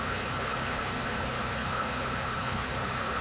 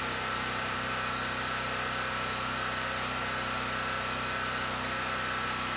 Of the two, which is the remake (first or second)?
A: first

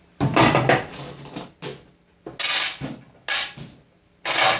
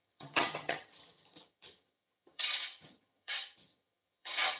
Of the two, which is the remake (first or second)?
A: second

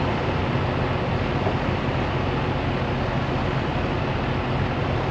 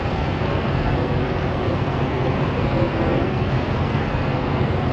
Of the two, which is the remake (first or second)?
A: second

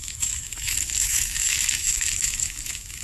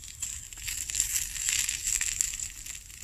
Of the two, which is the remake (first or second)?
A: first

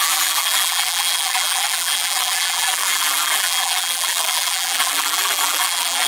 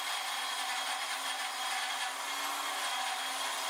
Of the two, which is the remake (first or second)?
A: first